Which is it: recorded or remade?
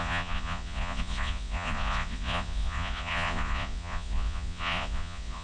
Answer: remade